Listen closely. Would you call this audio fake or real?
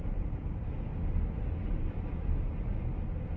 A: real